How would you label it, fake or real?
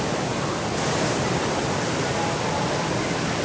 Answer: real